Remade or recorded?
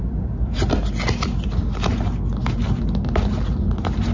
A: recorded